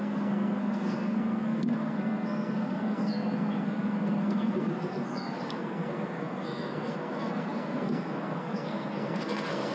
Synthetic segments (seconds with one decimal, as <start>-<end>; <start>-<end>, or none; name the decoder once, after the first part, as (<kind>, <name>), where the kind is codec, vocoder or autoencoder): 0.0-9.7 (codec, SNAC)